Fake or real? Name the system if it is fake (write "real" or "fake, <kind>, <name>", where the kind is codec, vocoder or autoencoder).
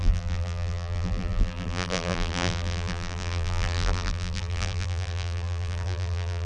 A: fake, vocoder, BigVGAN v2